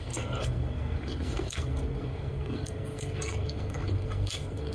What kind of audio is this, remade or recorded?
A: remade